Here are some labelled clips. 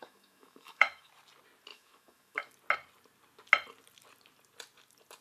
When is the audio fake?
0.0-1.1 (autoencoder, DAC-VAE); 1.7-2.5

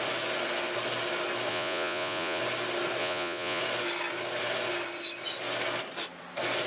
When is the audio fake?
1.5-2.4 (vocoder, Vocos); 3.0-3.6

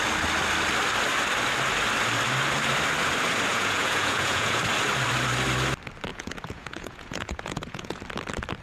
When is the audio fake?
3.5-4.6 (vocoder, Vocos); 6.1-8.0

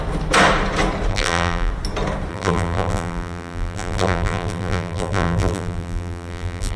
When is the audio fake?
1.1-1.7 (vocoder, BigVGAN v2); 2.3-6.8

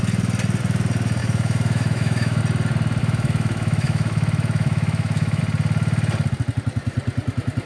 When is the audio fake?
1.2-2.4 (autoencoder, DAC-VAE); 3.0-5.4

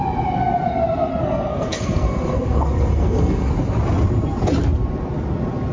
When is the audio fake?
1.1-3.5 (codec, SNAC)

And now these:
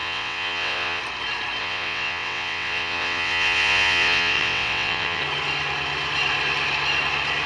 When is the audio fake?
0.0-1.0 (vocoder, WaveNeXt); 1.6-5.2